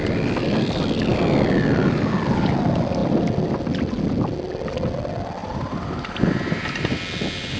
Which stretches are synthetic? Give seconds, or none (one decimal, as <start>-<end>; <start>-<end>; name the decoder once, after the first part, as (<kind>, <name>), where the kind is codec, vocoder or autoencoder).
5.4-7.0 (vocoder, BigVGAN v2)